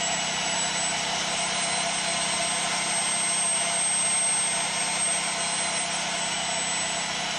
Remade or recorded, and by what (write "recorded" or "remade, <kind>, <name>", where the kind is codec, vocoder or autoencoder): recorded